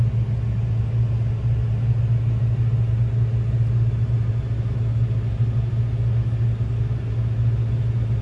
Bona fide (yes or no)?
yes